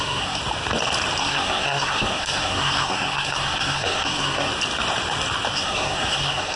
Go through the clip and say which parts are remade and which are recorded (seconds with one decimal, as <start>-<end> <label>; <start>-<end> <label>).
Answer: 0.0-0.4 remade; 0.4-1.2 recorded; 1.2-4.5 remade; 4.5-5.5 recorded; 5.5-6.6 remade

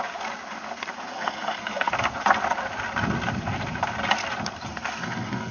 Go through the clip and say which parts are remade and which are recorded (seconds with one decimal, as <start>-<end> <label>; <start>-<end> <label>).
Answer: 0.0-1.1 recorded; 1.1-1.9 remade; 1.9-4.7 recorded; 4.7-5.5 remade

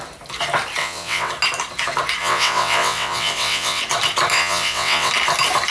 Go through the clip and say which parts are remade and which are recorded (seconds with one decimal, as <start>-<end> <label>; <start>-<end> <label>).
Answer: 0.0-0.8 recorded; 0.8-1.3 remade; 1.3-2.2 recorded; 2.2-3.8 remade; 3.8-4.3 recorded; 4.3-5.1 remade; 5.1-5.7 recorded